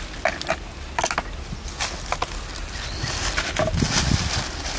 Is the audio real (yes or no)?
yes